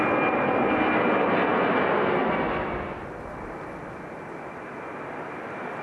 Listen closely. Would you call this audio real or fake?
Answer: real